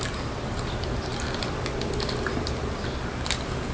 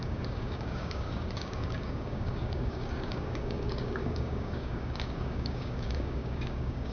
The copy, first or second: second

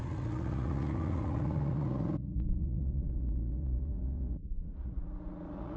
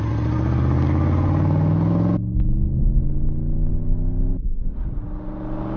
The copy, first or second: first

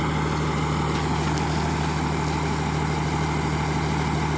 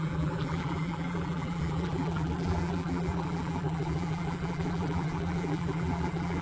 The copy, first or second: second